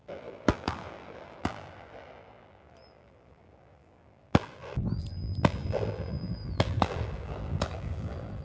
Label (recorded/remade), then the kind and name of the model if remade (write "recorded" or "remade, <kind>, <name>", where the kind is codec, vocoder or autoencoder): remade, vocoder, BigVGAN v2